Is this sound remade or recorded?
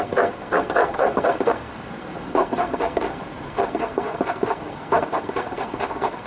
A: remade